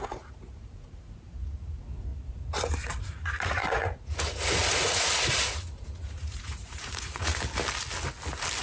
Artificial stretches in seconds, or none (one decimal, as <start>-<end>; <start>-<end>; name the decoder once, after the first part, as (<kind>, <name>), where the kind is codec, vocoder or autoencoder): 0.0-2.1 (vocoder, Vocos); 3.0-7.3